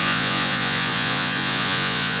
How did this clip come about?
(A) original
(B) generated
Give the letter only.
B